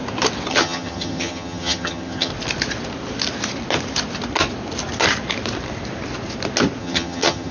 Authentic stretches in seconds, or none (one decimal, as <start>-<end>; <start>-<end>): 0.0-0.5; 2.3-6.8